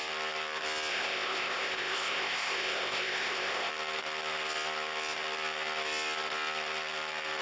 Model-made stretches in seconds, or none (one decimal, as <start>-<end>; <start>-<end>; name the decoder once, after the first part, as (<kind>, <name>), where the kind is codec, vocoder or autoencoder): 0.9-3.7 (codec, ZipCodec)